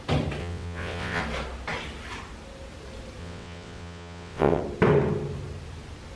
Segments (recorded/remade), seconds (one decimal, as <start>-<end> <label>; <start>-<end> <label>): 0.0-0.4 recorded; 0.4-1.2 remade; 1.2-3.2 recorded; 3.2-4.6 remade; 4.6-6.2 recorded